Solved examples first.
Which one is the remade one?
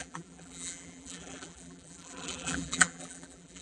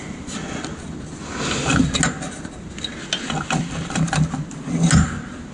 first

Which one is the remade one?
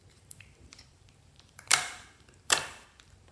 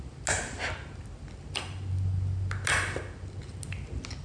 first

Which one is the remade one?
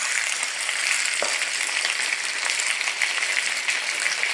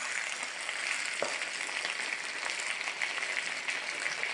first